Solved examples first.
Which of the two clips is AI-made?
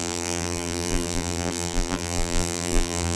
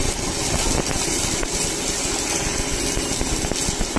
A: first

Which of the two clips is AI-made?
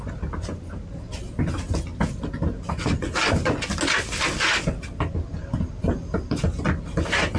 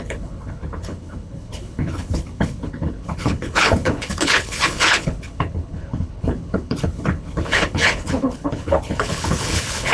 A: second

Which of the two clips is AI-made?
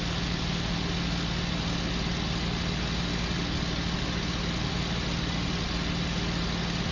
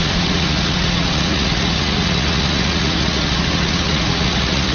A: second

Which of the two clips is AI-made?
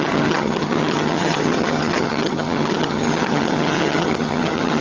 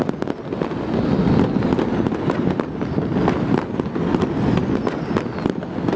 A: first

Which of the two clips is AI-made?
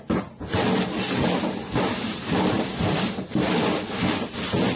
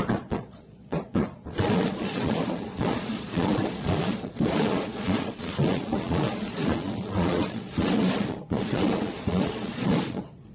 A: second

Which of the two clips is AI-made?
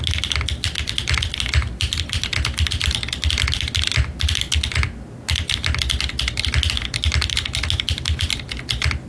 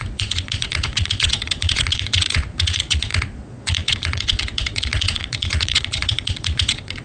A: second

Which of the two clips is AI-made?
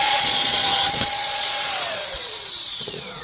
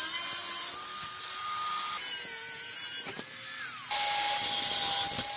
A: first